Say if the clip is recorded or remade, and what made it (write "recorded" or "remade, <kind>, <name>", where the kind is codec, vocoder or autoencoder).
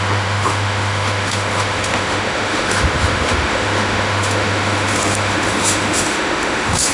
remade, autoencoder, DAC-VAE